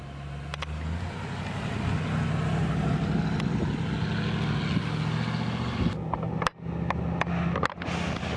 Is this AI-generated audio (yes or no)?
no